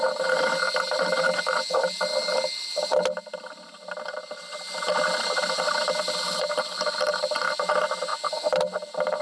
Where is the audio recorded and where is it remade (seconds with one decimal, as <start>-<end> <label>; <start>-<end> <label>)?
0.0-9.2 recorded